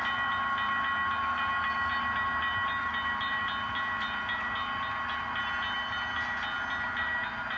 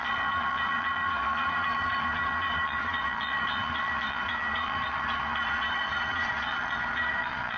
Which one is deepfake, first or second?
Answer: second